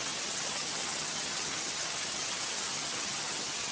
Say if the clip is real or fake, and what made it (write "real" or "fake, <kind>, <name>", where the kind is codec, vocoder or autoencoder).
fake, vocoder, HiFi-GAN